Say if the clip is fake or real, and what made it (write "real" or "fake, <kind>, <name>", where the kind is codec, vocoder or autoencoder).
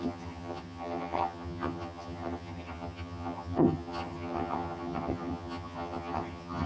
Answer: fake, vocoder, HiFi-GAN